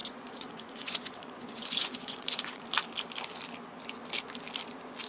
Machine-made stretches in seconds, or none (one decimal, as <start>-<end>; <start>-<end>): 0.0-2.6